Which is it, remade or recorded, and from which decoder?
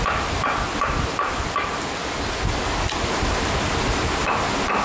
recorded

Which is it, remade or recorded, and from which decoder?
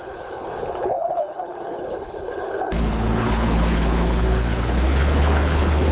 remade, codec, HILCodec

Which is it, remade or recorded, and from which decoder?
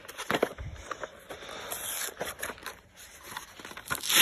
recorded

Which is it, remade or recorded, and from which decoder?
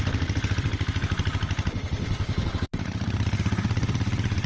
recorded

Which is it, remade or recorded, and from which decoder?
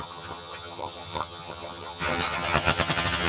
remade, vocoder, HiFi-GAN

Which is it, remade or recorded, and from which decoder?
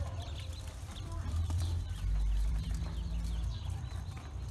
remade, vocoder, BigVGAN v2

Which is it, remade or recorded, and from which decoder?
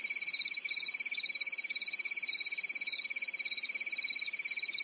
recorded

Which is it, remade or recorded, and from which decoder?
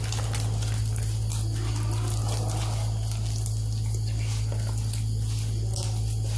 recorded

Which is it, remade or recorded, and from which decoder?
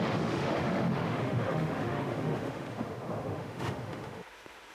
remade, autoencoder, DAC-VAE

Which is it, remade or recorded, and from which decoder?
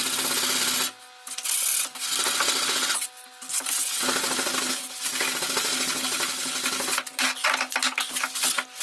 recorded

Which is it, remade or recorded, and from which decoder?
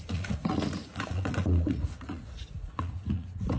remade, vocoder, Vocos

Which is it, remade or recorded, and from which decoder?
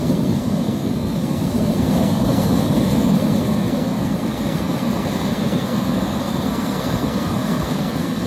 remade, codec, SNAC